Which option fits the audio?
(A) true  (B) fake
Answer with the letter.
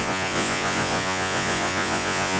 B